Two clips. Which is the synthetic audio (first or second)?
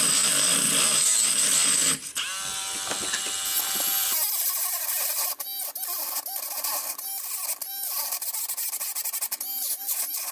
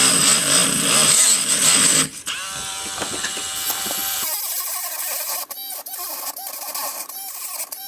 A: second